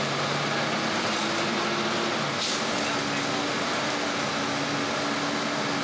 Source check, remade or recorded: recorded